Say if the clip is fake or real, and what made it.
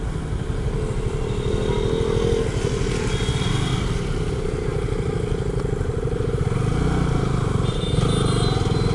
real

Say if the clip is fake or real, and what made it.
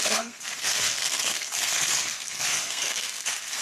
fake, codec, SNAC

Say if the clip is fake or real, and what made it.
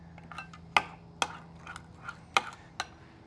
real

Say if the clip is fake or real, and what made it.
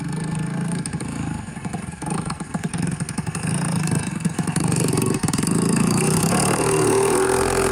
fake, codec, SNAC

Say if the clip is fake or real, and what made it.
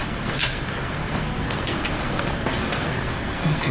fake, codec, SNAC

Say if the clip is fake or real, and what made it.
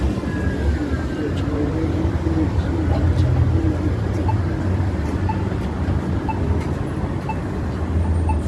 real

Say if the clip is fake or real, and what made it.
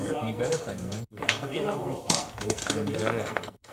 fake, codec, SNAC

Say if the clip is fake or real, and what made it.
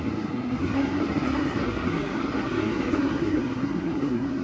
fake, codec, SNAC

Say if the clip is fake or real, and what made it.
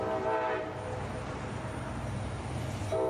real